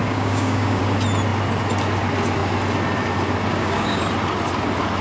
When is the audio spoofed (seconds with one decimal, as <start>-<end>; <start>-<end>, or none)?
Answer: 0.0-0.8; 3.5-4.0